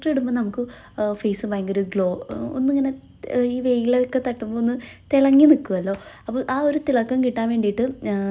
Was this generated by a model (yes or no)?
no